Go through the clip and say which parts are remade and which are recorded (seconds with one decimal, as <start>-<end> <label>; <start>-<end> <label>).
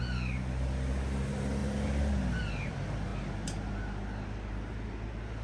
0.0-5.4 recorded